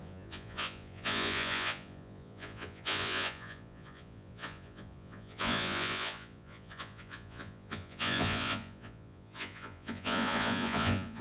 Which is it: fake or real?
fake